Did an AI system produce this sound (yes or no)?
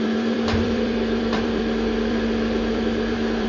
yes